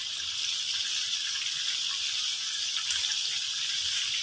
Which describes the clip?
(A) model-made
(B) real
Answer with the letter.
B